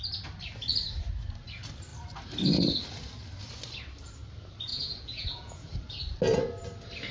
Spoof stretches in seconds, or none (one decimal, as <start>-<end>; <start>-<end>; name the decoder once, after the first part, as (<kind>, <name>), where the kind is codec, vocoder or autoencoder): 4.7-5.7 (vocoder, Vocos)